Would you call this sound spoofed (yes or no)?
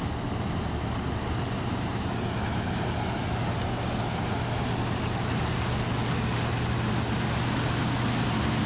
no